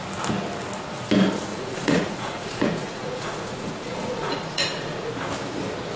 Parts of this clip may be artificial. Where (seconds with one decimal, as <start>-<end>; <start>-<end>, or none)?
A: 1.5-5.1